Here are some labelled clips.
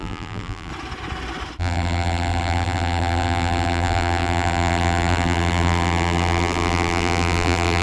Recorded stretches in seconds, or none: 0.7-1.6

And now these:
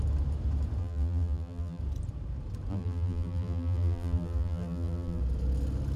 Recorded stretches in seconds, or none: 0.0-0.8; 1.8-2.7; 5.2-6.0

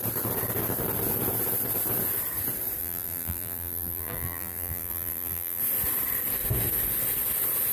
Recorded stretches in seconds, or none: 0.0-2.8; 5.6-7.7

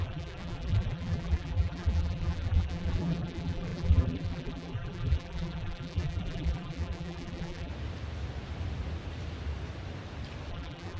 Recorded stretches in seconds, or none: 7.7-10.5